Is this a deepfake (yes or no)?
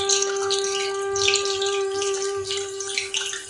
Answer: no